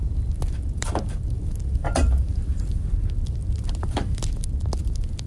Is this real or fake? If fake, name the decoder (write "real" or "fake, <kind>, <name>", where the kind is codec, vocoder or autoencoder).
fake, vocoder, BigVGAN v2